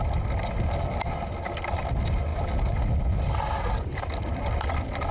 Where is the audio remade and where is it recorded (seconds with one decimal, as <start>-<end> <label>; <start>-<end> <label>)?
0.0-5.1 recorded